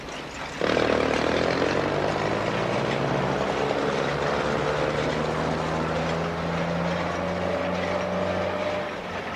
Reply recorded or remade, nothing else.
recorded